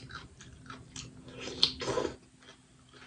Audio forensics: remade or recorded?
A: recorded